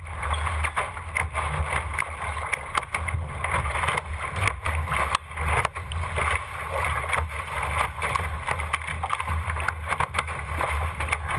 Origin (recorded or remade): recorded